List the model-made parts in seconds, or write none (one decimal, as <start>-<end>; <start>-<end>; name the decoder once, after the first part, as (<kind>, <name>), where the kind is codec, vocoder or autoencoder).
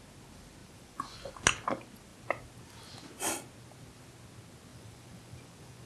0.6-1.3 (vocoder, Vocos); 4.7-5.9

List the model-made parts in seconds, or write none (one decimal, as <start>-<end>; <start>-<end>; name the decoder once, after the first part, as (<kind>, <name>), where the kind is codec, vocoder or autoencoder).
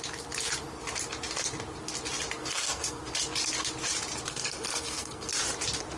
2.4-3.0 (codec, SNAC); 4.3-5.3